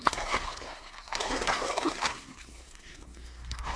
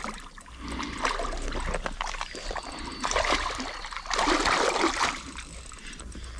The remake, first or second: first